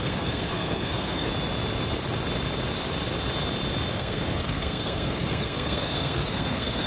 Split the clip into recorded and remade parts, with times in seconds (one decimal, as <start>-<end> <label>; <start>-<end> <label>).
0.0-1.3 remade; 1.3-3.9 recorded; 3.9-6.9 remade